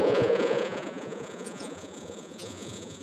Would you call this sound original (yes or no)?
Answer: no